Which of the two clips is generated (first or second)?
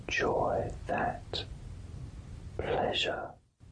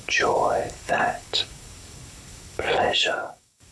second